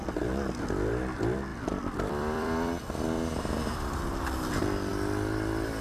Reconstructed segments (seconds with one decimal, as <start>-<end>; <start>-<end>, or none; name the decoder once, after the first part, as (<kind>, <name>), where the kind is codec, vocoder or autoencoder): 1.5-4.2 (vocoder, BigVGAN v2)